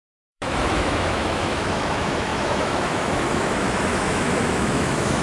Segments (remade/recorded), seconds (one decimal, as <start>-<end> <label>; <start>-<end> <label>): 0.0-5.2 remade